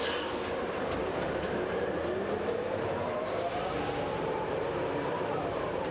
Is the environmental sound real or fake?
fake